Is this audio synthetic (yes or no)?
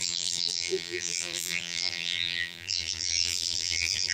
yes